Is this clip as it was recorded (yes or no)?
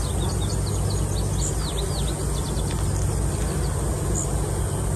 yes